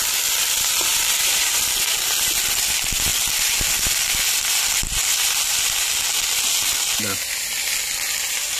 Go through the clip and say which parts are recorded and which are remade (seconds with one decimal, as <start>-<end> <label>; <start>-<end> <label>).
0.0-0.9 recorded; 0.9-1.5 remade; 1.5-8.6 recorded